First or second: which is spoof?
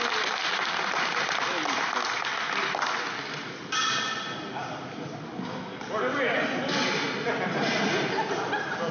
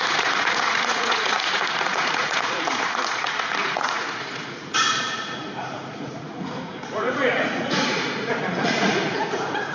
second